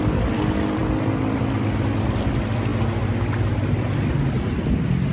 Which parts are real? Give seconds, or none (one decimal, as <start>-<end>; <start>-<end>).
0.0-5.1